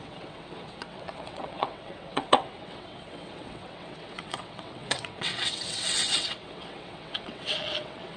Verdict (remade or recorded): remade